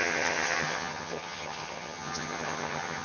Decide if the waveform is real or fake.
fake